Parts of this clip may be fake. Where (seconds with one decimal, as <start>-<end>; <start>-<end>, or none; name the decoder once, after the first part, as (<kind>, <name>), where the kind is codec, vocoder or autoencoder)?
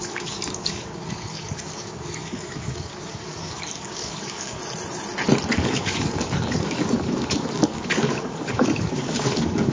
0.0-4.6 (codec, DAC); 5.5-9.7